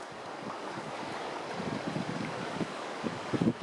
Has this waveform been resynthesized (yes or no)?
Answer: yes